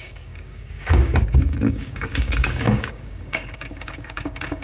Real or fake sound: fake